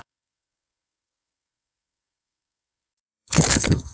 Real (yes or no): no